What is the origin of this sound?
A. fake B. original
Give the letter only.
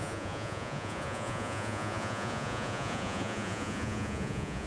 A